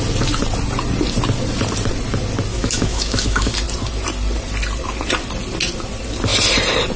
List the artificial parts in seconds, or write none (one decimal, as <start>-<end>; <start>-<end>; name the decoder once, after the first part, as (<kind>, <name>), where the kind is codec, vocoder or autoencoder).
2.5-3.5 (autoencoder, DAC-VAE)